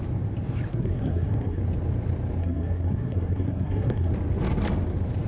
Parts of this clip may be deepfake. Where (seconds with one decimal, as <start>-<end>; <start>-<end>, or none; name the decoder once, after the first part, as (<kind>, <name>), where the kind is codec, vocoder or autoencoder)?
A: 0.7-1.6 (codec, SNAC); 2.4-4.1